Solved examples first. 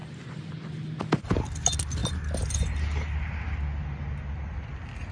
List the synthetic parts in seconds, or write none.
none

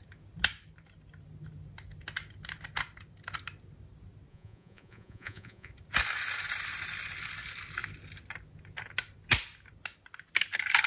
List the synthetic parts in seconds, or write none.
4.3-5.7 (vocoder, Vocos)

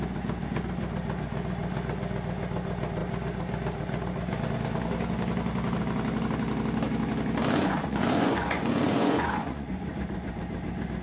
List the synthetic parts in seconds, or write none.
7.6-10.3 (vocoder, Vocos)